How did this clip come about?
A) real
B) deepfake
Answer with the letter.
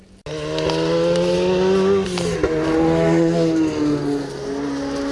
A